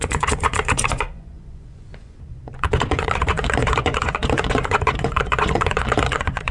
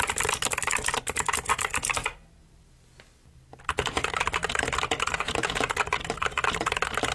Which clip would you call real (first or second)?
second